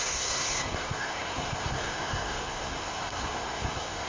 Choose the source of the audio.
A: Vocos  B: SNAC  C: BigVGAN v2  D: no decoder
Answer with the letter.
B